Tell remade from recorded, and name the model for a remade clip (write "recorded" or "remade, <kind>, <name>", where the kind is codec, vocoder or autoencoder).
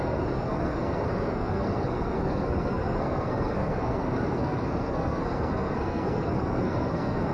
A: remade, codec, SNAC